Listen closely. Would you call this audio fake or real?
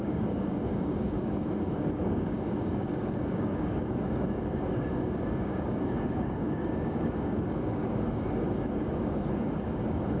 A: fake